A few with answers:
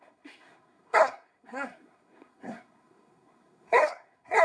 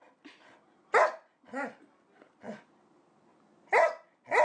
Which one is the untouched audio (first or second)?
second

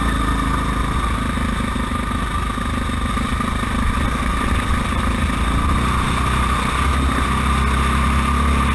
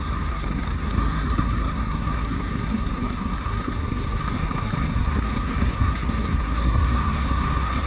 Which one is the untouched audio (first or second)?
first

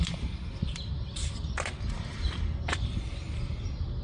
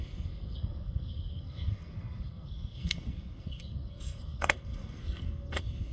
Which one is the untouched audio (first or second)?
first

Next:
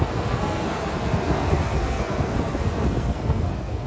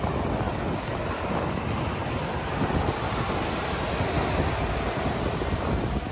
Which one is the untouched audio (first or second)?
second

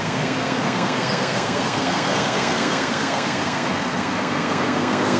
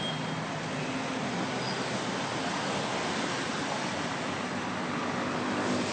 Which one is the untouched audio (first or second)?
second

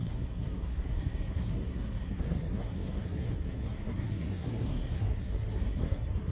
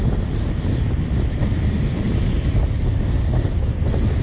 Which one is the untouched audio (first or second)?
second